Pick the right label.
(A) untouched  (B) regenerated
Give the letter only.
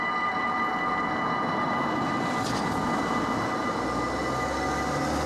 A